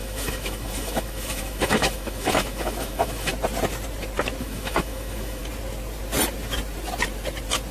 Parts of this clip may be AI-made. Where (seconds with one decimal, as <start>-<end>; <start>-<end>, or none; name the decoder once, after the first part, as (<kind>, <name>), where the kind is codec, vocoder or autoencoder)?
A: 0.0-3.3 (autoencoder, DAC-VAE); 4.4-5.4